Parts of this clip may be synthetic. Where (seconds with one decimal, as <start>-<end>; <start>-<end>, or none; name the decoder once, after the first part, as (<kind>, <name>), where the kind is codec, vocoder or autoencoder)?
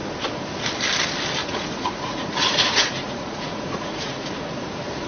1.4-4.5 (vocoder, Vocos)